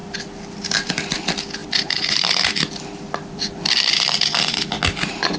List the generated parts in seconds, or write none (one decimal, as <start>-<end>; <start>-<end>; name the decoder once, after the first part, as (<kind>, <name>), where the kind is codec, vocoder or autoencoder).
0.0-0.9 (vocoder, BigVGAN v2); 1.6-4.8